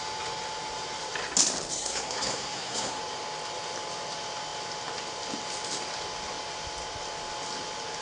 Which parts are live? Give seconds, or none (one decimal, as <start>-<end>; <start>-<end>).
0.0-1.7; 3.0-8.0